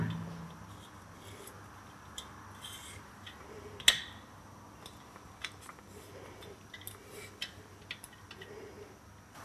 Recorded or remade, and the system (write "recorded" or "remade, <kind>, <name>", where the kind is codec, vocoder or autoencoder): recorded